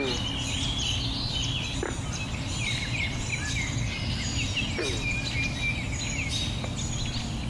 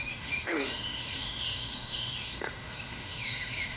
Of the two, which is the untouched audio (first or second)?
first